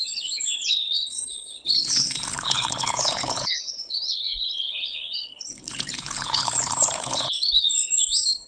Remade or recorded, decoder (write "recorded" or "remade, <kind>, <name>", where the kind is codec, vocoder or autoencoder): remade, codec, HILCodec